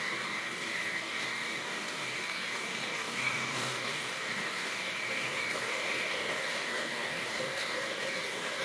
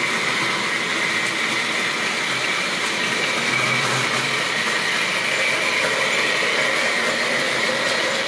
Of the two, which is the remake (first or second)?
first